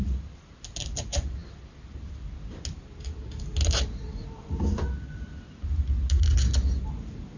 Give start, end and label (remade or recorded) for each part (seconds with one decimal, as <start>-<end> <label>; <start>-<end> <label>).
0.0-7.4 recorded